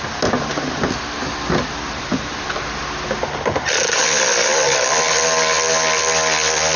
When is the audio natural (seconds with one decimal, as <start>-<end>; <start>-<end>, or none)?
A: 0.0-6.8

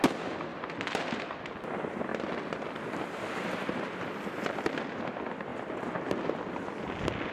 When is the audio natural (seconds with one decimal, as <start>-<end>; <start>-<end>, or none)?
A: 0.0-0.5; 1.6-2.1; 4.1-7.3

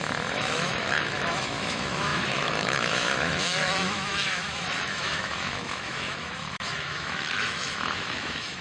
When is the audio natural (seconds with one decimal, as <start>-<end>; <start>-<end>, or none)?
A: none

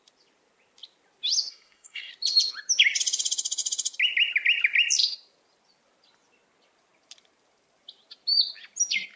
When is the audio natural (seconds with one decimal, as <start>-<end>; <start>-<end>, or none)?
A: 0.0-1.5; 2.1-9.2

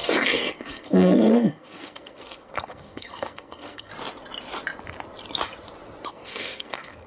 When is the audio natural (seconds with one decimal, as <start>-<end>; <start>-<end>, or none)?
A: 3.9-6.1